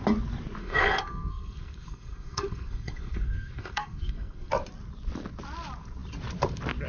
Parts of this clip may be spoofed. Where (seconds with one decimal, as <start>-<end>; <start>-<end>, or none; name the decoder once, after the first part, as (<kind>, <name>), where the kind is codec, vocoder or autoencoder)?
0.6-4.5 (codec, SNAC)